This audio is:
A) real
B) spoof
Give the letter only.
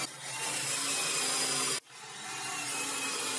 A